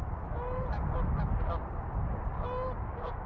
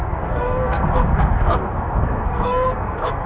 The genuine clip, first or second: first